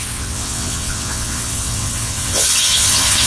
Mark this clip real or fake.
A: fake